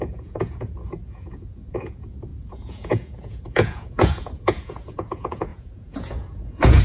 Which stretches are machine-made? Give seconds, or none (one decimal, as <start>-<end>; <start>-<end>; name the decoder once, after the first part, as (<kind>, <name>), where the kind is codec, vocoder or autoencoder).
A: 0.0-6.8 (vocoder, Vocos)